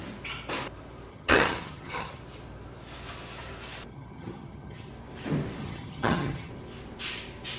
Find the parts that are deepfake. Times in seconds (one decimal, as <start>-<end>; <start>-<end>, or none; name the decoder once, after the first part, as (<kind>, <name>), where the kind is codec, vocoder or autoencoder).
1.1-2.2 (vocoder, HiFi-GAN); 3.9-4.9; 5.6-6.5